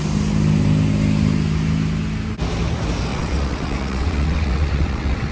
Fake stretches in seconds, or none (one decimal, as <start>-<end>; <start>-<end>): 3.1-5.3